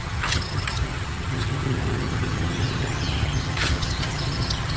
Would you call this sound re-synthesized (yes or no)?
yes